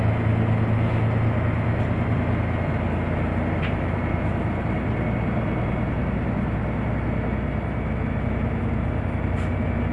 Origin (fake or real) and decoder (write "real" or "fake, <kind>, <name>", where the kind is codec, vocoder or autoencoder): real